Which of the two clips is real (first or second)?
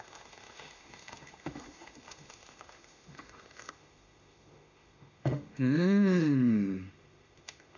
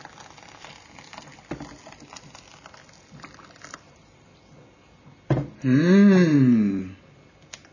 second